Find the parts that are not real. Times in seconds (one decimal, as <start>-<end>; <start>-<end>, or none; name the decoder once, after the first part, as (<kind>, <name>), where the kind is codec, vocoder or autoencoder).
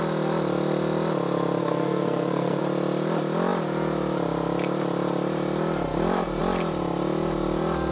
1.6-2.6 (codec, SNAC)